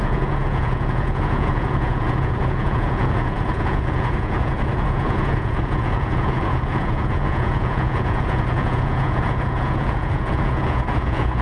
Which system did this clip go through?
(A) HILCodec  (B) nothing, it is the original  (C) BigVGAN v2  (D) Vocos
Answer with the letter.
D